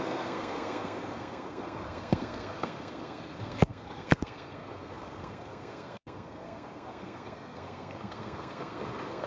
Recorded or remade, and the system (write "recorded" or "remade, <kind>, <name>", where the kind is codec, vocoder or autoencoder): remade, codec, SNAC